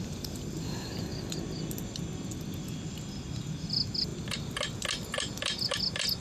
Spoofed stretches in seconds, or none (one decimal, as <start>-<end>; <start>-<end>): none